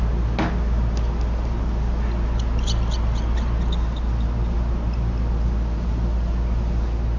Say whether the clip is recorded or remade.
recorded